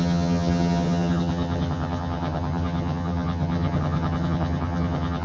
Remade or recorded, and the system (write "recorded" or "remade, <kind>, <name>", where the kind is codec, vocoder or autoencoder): remade, vocoder, HiFi-GAN